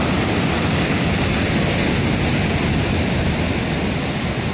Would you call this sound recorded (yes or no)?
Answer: yes